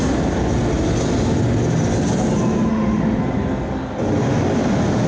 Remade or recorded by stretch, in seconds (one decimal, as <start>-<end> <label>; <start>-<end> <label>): 0.0-2.7 recorded; 2.7-3.2 remade; 3.2-5.1 recorded